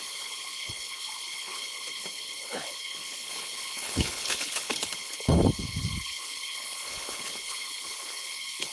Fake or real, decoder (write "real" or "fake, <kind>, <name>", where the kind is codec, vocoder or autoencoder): fake, codec, HILCodec